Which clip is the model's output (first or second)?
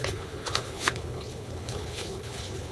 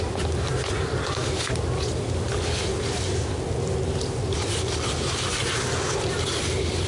first